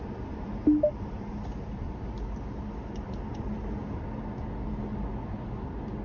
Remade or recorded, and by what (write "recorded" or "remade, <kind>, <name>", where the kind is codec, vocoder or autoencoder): recorded